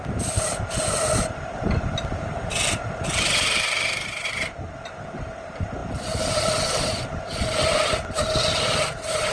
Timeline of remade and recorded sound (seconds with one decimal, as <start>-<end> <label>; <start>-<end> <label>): 0.0-9.3 recorded